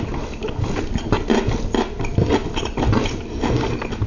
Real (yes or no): yes